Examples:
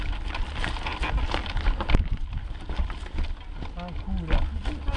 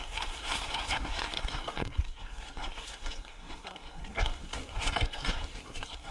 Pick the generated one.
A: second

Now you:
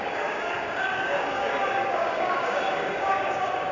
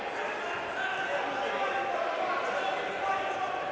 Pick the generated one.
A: first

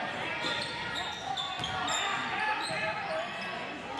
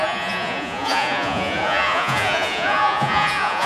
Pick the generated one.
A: second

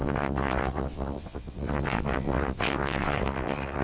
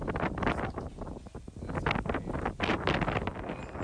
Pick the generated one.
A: first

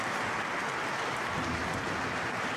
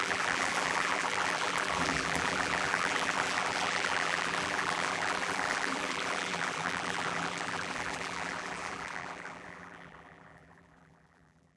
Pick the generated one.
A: second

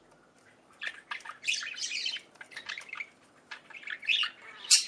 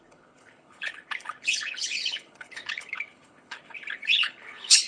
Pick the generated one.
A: second